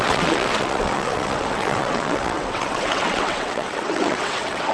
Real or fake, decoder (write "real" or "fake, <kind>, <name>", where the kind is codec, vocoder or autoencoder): fake, vocoder, WaveNeXt